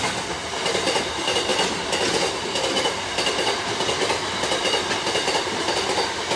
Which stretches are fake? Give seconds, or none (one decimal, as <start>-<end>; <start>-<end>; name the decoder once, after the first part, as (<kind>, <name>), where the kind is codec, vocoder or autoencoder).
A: none